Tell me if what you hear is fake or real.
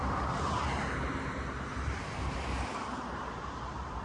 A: fake